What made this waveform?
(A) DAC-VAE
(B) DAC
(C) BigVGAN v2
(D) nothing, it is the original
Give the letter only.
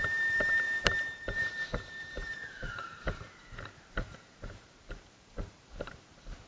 C